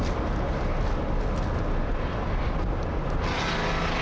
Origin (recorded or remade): recorded